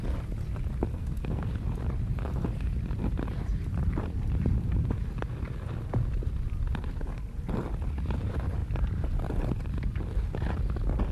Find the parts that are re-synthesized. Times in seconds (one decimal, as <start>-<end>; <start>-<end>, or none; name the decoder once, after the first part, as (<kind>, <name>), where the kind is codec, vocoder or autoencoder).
0.9-1.5 (codec, SNAC)